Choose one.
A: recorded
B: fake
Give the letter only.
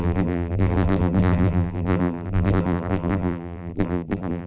B